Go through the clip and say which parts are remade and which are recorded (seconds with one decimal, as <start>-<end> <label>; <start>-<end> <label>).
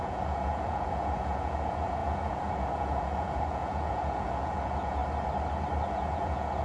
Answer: 0.0-5.0 remade; 5.0-5.9 recorded; 5.9-6.6 remade